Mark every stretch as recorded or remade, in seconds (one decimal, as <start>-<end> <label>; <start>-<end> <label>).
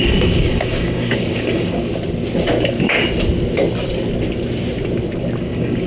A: 0.0-1.9 remade; 1.9-5.4 recorded; 5.4-5.9 remade